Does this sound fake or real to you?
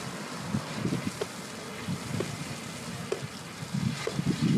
real